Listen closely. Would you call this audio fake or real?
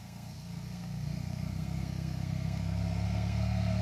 fake